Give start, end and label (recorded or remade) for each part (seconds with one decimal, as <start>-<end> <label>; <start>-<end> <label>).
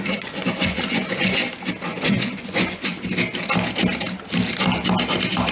0.0-1.4 remade; 1.4-1.9 recorded; 1.9-2.9 remade; 2.9-5.5 recorded